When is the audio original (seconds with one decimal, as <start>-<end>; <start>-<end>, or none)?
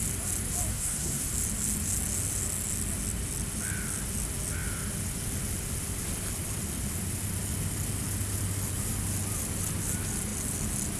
0.0-0.7; 1.3-11.0